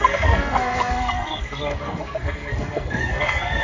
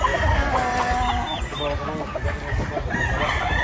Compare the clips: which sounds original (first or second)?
second